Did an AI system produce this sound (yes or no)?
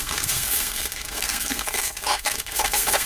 yes